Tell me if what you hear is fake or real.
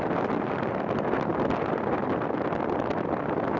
real